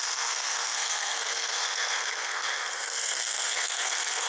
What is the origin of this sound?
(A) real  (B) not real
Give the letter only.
B